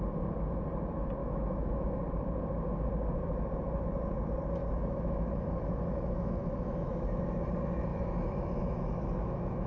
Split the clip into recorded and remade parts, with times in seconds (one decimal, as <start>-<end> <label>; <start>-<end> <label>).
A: 0.0-1.2 recorded; 1.2-2.0 remade; 2.0-4.6 recorded; 4.6-7.2 remade; 7.2-7.9 recorded; 7.9-9.7 remade